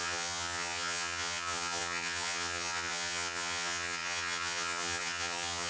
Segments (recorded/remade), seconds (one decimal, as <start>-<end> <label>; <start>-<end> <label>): 0.0-5.7 remade